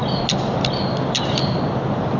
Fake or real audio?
real